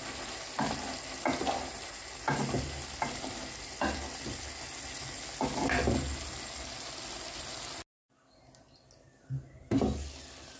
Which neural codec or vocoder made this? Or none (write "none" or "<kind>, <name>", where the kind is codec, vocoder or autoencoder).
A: none